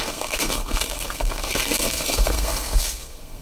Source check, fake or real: fake